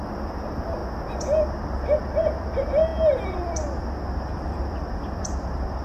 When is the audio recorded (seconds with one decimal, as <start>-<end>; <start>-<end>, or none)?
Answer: 0.0-5.8